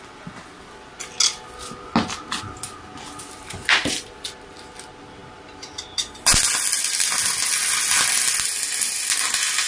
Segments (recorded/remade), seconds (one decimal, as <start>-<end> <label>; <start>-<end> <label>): 0.0-9.7 recorded